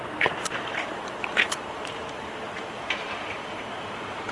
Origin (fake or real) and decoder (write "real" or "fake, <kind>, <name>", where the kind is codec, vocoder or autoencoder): fake, vocoder, BigVGAN v2